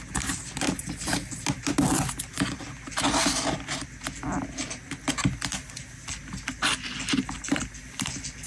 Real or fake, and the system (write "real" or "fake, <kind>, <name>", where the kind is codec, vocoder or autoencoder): real